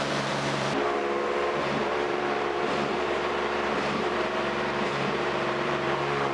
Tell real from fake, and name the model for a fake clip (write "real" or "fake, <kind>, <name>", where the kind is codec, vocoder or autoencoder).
fake, vocoder, BigVGAN v2